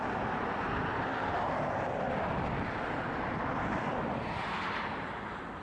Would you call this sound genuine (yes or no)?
yes